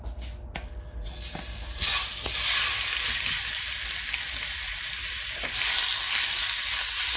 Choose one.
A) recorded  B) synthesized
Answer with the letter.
A